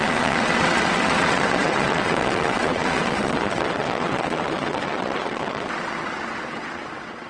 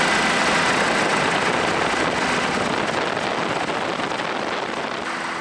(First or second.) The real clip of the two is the second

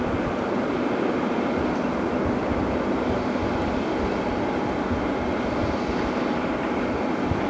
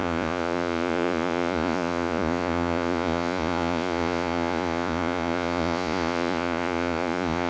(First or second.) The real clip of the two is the first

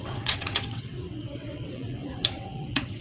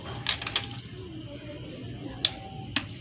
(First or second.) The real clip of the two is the second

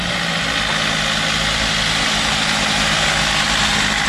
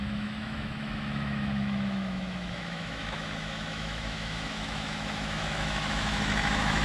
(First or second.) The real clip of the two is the first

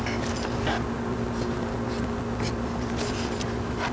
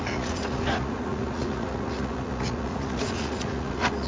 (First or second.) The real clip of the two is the first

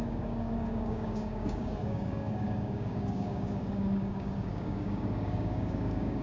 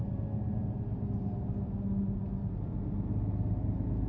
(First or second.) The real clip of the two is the second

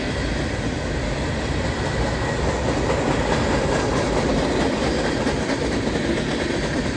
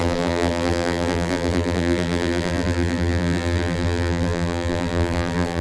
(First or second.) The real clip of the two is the first